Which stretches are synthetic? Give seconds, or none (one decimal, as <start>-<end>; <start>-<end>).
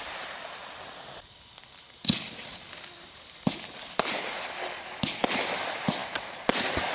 none